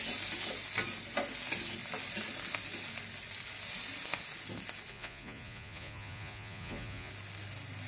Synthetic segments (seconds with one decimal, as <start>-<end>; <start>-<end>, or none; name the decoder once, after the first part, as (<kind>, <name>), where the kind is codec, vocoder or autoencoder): 4.9-7.1 (vocoder, Vocos)